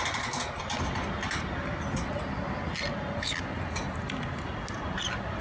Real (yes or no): yes